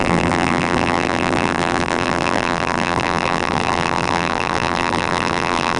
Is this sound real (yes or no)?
no